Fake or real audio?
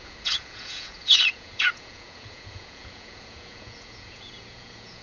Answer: fake